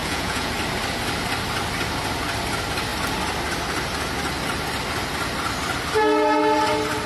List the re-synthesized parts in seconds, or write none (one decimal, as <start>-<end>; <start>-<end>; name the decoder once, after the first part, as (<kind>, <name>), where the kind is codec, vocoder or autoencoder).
0.0-0.5 (vocoder, Vocos)